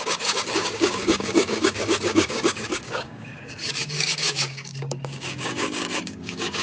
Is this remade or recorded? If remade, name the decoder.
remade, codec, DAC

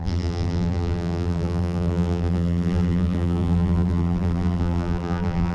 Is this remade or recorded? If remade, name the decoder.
remade, vocoder, BigVGAN v2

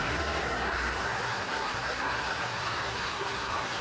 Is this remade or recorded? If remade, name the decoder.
remade, codec, SNAC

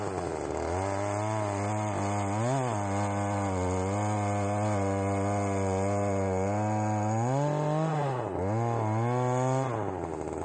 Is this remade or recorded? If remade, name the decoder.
recorded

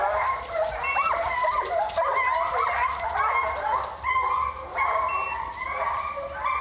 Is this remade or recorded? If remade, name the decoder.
recorded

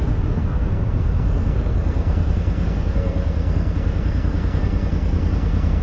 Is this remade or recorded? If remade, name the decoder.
remade, codec, SNAC